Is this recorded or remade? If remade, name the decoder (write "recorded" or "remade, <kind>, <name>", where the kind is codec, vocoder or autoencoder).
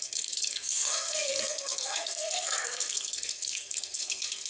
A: remade, codec, SNAC